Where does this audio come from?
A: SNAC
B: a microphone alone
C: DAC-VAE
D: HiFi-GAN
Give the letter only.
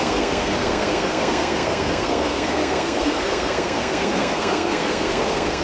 A